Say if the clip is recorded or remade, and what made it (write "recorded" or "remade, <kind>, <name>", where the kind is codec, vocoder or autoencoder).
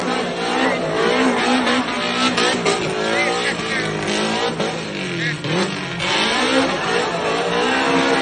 recorded